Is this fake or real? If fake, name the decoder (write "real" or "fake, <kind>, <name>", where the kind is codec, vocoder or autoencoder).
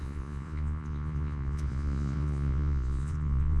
fake, vocoder, Vocos